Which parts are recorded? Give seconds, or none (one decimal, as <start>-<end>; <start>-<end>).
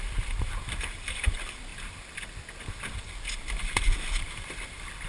0.0-5.1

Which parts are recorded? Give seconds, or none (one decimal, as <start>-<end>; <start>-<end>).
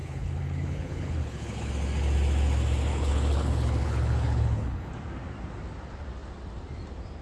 1.7-2.9; 4.9-7.2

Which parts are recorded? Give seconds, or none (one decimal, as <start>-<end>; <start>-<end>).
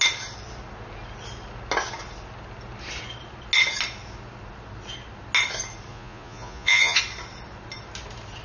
0.0-5.9; 7.0-8.4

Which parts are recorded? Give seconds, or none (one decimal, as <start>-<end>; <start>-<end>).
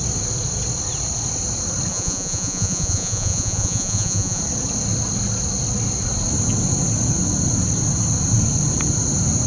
0.0-1.9; 4.4-9.5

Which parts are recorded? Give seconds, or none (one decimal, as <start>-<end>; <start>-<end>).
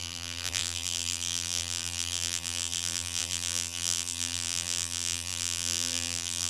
none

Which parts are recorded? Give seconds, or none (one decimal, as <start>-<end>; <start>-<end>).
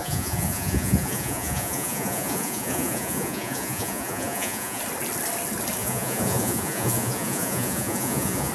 4.8-5.8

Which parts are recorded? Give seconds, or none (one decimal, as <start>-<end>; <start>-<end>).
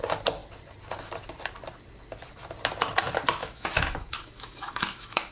0.0-3.4